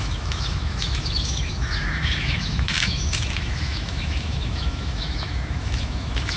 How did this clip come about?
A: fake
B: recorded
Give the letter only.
A